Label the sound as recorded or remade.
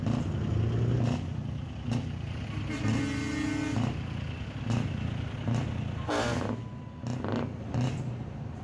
recorded